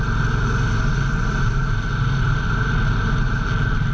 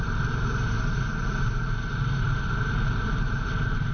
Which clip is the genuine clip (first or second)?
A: first